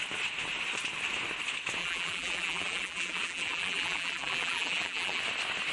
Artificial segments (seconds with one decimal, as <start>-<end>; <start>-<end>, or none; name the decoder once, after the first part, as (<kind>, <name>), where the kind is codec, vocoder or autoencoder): 1.8-5.2 (vocoder, BigVGAN v2)